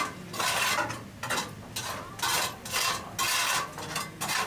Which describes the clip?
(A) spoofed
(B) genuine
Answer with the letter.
B